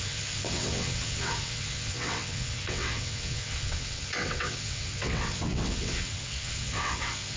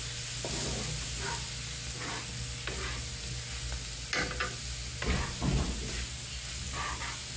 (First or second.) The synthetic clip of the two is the first